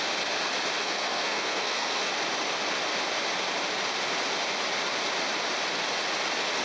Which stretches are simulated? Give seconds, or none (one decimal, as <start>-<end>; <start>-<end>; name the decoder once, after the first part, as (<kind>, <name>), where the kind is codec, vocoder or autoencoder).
0.8-2.1 (codec, SNAC)